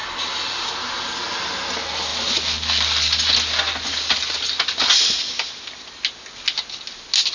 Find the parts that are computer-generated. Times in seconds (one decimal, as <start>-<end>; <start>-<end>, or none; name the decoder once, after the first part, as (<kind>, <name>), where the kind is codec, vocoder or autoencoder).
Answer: none